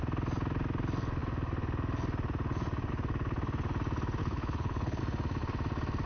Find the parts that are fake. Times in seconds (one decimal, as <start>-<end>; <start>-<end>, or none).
4.2-5.0